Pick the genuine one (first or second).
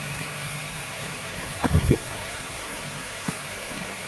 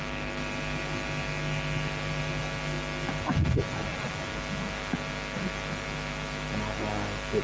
second